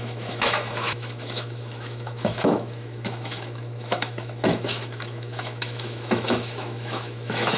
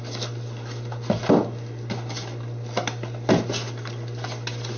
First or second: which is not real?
first